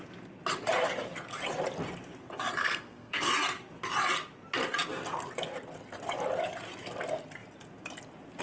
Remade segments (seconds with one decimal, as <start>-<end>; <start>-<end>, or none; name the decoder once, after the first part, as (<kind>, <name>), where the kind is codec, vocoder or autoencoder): 2.6-3.3 (codec, SNAC)